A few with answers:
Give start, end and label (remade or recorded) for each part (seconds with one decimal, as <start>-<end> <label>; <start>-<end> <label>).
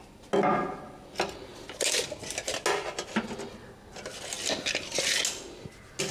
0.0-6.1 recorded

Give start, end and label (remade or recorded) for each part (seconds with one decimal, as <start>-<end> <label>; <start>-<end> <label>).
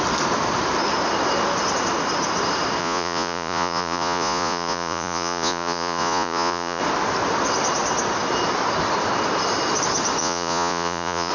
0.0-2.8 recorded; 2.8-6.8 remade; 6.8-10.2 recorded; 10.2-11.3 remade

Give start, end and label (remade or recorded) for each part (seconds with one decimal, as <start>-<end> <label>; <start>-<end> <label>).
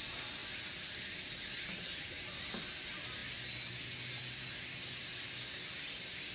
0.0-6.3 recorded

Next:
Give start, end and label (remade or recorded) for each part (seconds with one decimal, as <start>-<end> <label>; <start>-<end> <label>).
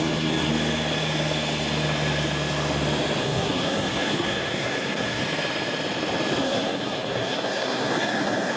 0.0-0.5 remade; 0.5-3.2 recorded; 3.2-5.2 remade; 5.2-6.4 recorded; 6.4-8.6 remade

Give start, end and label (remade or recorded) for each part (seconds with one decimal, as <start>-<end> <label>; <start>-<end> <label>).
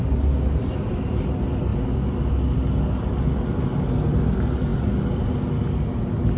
0.0-6.4 recorded